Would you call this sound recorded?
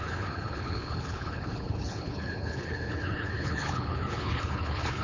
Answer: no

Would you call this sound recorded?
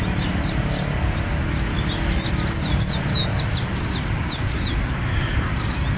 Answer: yes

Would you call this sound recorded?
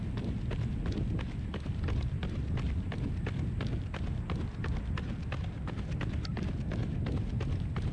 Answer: yes